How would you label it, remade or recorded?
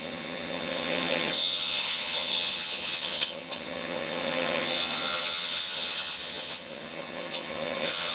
remade